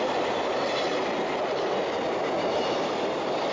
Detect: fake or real real